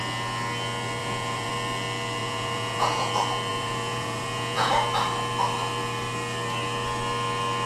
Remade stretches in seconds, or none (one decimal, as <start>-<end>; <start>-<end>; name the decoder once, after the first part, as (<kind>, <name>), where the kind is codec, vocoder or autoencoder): 1.0-1.5 (vocoder, Vocos); 2.2-3.1; 3.5-4.7

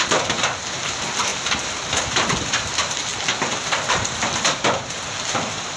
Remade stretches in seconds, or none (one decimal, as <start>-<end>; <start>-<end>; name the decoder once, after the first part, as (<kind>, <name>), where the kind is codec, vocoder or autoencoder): 0.0-3.1 (vocoder, BigVGAN v2); 3.6-5.8

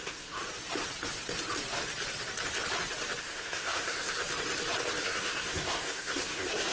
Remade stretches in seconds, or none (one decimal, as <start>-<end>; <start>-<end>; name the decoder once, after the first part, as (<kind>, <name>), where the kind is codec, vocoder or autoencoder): 0.0-0.4 (codec, SNAC); 3.2-4.2; 5.0-6.7

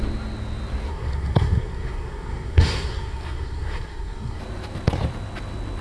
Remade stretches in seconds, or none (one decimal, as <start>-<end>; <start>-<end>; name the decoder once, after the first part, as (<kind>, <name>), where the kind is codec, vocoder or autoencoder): 0.9-4.4 (codec, SNAC)

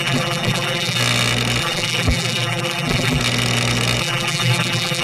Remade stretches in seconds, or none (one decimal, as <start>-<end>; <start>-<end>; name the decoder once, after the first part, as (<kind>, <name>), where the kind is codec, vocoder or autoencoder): 0.0-1.0 (vocoder, BigVGAN v2); 1.6-3.2; 4.0-5.0

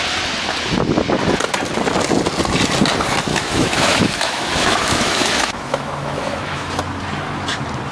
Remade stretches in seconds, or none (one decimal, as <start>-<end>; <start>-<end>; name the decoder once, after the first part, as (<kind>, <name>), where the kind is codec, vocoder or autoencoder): 3.3-6.7 (autoencoder, DAC-VAE)